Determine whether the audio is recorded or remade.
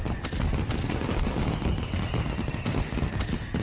recorded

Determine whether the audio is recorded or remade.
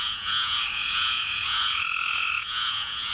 remade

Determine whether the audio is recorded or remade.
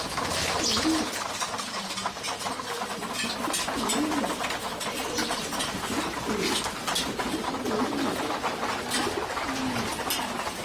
recorded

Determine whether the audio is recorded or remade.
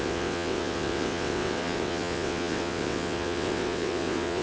remade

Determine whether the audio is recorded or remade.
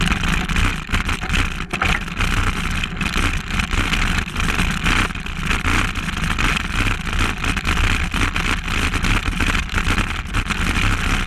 recorded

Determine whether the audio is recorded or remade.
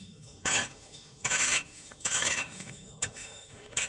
remade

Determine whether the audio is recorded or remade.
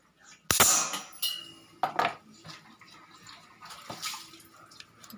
recorded